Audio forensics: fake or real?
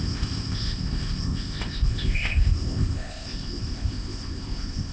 fake